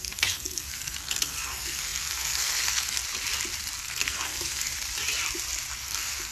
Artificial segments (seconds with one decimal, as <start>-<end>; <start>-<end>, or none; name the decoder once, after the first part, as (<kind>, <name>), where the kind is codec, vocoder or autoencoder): 0.0-3.0 (codec, SNAC); 3.8-4.7; 5.8-6.3